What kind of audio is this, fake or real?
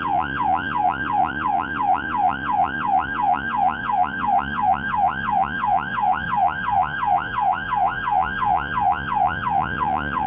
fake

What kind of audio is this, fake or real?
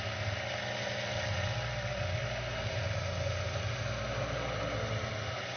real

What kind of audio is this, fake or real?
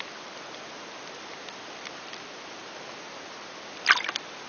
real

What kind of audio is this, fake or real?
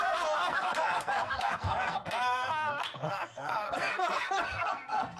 fake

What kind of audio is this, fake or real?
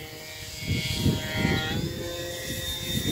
real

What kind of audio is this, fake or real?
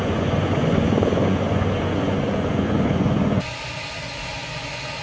fake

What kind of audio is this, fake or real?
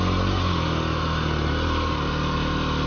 real